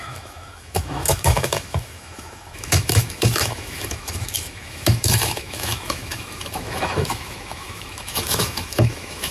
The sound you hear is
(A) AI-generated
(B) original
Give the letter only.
A